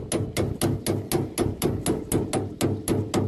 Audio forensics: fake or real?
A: real